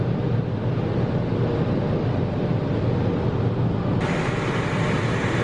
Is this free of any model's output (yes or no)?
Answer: yes